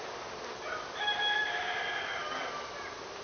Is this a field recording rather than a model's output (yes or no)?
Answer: yes